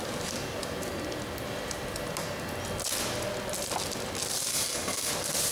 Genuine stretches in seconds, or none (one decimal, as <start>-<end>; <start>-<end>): 0.0-4.5; 5.1-5.5